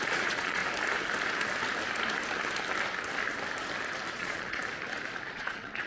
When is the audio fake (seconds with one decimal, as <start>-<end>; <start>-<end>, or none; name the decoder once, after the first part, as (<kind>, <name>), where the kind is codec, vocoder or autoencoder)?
0.0-0.6 (vocoder, Vocos); 4.1-4.6; 5.3-5.9